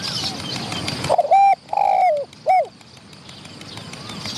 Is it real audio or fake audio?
real